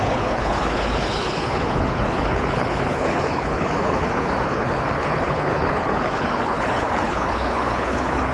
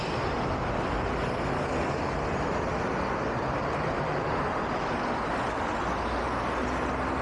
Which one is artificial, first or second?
first